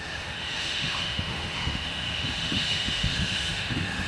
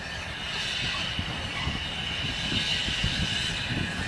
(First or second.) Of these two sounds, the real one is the second